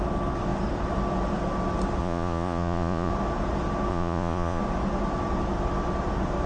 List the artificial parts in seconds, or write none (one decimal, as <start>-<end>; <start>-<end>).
2.0-3.1; 3.9-4.6